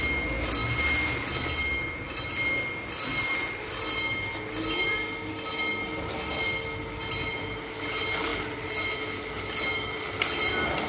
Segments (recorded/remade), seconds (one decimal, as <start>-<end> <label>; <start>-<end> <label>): 0.0-10.9 recorded